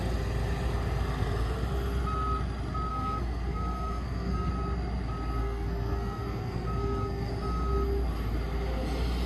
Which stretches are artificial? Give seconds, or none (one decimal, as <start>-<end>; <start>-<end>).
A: 2.9-4.5; 5.4-7.3